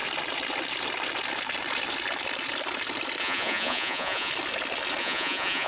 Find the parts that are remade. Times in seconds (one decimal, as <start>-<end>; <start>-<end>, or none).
3.2-4.3; 5.0-5.7